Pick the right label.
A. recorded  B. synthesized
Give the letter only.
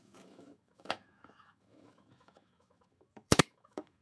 B